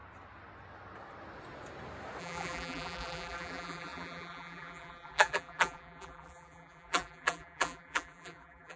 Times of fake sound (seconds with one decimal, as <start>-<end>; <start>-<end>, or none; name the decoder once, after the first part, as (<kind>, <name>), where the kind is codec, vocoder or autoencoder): 2.2-8.8 (vocoder, BigVGAN v2)